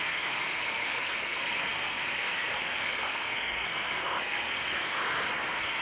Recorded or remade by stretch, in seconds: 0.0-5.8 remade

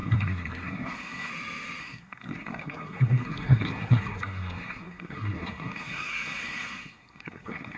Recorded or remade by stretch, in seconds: 0.0-1.3 remade; 1.3-1.8 recorded; 1.8-7.8 remade

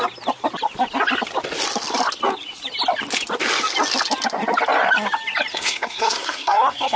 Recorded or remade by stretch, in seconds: 0.0-5.5 recorded; 5.5-7.0 remade